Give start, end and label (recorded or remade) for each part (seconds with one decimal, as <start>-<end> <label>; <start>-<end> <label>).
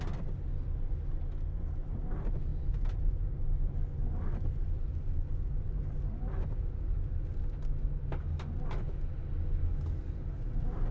0.0-2.5 recorded; 2.5-3.1 remade; 3.1-4.0 recorded; 4.0-7.1 remade; 7.1-10.9 recorded